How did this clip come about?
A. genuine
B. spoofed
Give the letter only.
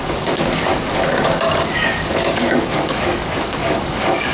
B